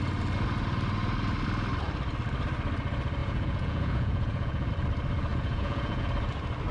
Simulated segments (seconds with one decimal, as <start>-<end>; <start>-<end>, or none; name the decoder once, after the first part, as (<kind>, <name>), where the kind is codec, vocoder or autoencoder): 3.2-4.7 (vocoder, Vocos); 5.3-6.1